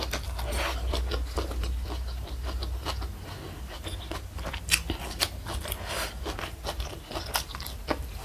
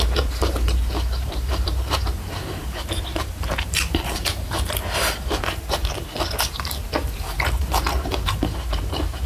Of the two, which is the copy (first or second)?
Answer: second